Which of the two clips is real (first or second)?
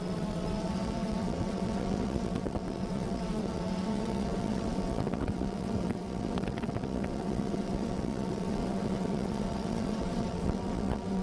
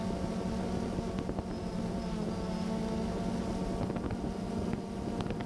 second